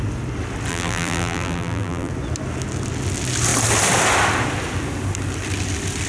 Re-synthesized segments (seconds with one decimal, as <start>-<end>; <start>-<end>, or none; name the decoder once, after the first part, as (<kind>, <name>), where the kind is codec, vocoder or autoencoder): 0.7-2.1 (vocoder, BigVGAN v2)